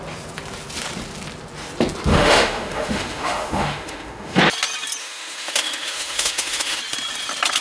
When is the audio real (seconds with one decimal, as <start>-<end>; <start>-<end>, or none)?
0.0-2.1; 4.4-5.0; 6.8-7.6